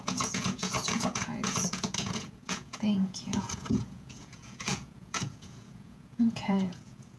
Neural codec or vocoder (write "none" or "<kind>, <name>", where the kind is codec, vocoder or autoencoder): vocoder, Vocos